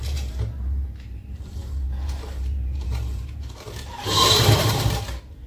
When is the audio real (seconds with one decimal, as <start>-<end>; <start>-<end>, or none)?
none